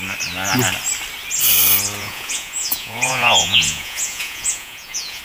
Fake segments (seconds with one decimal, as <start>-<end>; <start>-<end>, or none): 2.0-5.2